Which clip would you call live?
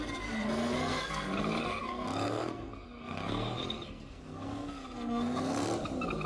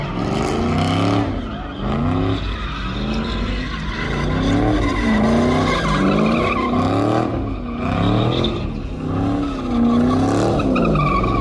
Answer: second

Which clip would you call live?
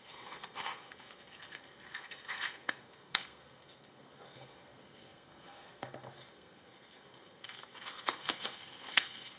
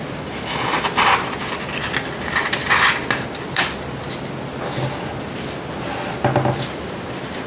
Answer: second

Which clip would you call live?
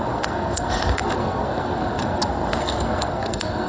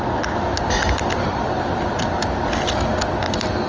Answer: second